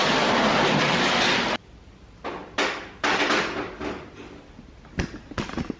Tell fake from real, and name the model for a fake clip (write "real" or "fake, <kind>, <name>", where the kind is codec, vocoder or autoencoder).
fake, vocoder, BigVGAN v2